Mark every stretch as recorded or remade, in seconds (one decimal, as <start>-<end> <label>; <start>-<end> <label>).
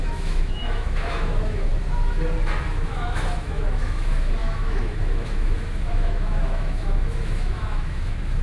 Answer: 0.0-1.7 remade; 1.7-2.7 recorded; 2.7-8.4 remade